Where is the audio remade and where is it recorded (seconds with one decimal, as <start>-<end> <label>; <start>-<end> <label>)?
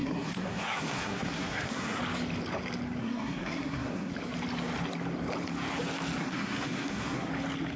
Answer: 0.0-2.0 remade; 2.0-3.0 recorded; 3.0-4.1 remade; 4.1-6.2 recorded; 6.2-7.3 remade; 7.3-7.8 recorded